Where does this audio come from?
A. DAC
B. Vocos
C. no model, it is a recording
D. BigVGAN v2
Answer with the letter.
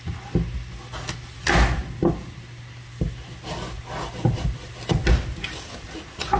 C